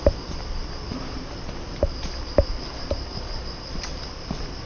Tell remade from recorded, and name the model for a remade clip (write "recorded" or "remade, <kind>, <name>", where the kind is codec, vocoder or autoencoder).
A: recorded